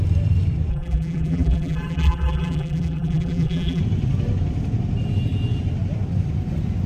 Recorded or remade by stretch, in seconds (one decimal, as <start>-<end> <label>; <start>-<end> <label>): 0.0-0.7 recorded; 0.7-3.8 remade; 3.8-6.9 recorded